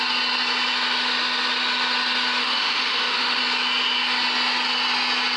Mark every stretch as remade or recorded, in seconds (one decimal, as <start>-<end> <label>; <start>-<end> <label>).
0.0-2.4 recorded; 2.4-3.4 remade; 3.4-5.4 recorded